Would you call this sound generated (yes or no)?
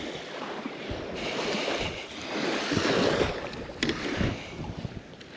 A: no